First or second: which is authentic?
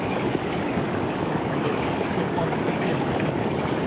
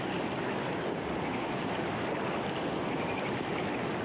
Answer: second